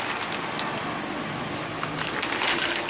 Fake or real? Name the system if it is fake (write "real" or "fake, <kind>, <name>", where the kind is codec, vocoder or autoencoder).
real